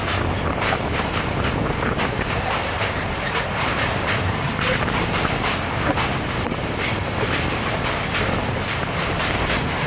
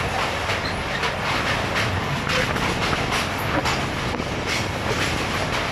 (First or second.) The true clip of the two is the second